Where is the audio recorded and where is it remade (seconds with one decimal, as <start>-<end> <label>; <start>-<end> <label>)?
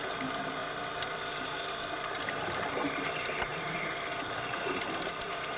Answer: 0.0-0.6 recorded; 0.6-2.7 remade; 2.7-3.5 recorded; 3.5-4.2 remade; 4.2-5.6 recorded